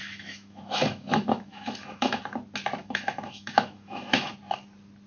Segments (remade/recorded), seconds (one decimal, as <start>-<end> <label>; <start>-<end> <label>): 0.0-2.2 remade; 2.2-2.8 recorded; 2.8-4.3 remade; 4.3-5.1 recorded